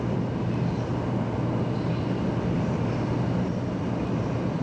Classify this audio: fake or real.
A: real